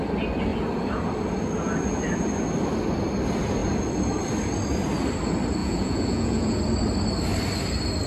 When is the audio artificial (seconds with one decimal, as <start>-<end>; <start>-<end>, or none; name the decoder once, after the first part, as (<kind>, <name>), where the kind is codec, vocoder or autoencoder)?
5.6-6.6 (vocoder, Vocos)